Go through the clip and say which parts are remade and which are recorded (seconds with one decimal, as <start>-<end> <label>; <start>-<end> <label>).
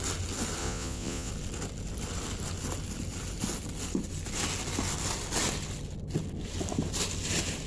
0.0-0.6 recorded; 0.6-1.3 remade; 1.3-7.7 recorded